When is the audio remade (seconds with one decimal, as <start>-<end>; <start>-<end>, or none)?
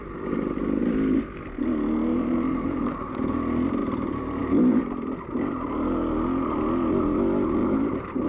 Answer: 2.1-3.1; 3.8-4.4; 7.6-8.3